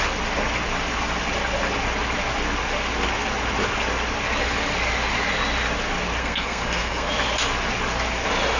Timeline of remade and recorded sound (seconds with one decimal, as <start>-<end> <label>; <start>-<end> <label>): 0.0-6.2 recorded; 6.2-7.1 remade; 7.1-8.6 recorded